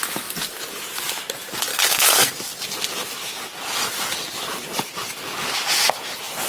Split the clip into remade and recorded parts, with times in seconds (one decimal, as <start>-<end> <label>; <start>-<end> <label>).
0.0-1.7 recorded; 1.7-2.3 remade; 2.3-6.5 recorded